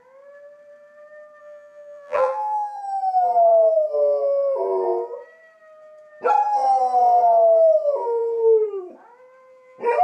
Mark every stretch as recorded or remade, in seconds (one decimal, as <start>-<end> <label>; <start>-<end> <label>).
0.0-1.4 recorded; 1.4-2.8 remade; 2.8-10.0 recorded